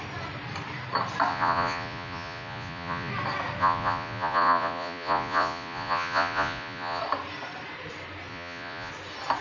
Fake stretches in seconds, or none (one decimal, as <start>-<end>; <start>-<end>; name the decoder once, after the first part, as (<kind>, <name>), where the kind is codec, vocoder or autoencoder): 1.3-3.1 (vocoder, Vocos); 3.6-7.0; 8.3-8.9